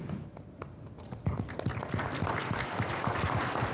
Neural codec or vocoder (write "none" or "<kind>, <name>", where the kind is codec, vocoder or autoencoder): none